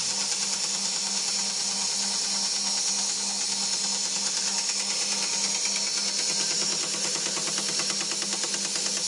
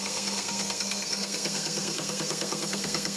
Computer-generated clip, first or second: second